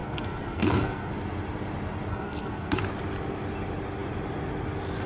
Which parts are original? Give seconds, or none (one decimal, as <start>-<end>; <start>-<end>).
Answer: 1.1-2.1; 2.8-5.1